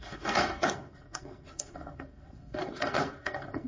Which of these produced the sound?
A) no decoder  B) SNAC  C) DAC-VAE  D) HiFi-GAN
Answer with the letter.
B